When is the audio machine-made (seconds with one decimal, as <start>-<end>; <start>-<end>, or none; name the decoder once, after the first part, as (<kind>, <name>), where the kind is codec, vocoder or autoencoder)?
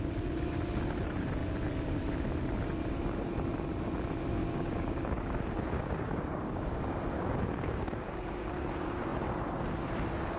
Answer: 4.4-8.5 (codec, DAC)